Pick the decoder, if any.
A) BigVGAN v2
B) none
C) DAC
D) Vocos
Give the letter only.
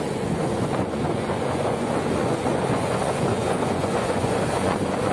D